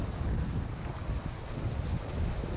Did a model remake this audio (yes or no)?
no